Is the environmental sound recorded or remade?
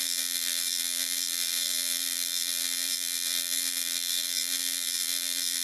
remade